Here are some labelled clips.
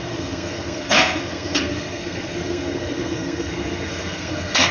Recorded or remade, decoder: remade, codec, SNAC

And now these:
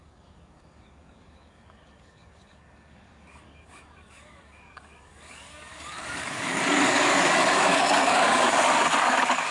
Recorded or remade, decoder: remade, codec, DAC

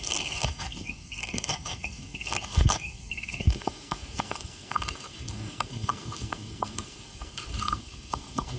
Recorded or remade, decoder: remade, codec, SNAC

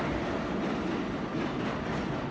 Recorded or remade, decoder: recorded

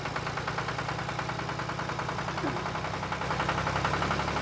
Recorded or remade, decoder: recorded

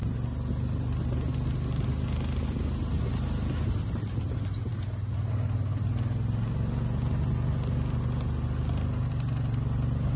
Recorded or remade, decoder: recorded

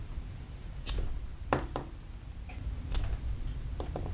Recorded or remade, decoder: recorded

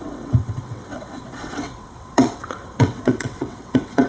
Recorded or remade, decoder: remade, vocoder, WaveNeXt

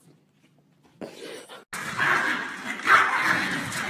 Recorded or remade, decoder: recorded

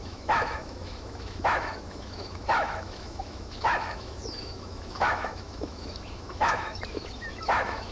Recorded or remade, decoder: remade, autoencoder, DAC-VAE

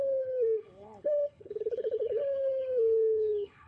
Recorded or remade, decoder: remade, codec, HILCodec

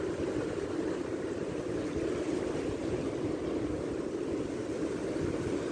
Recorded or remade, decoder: recorded